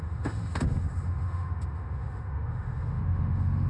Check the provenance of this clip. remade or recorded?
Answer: remade